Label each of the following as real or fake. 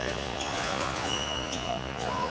fake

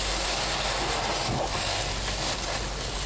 real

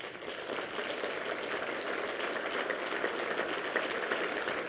real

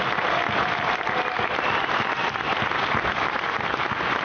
real